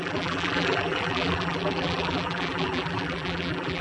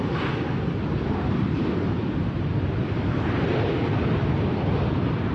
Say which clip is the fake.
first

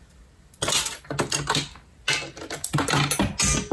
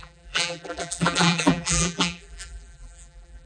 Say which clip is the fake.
second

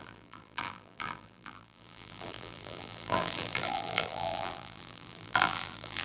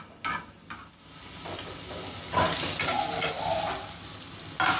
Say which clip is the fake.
first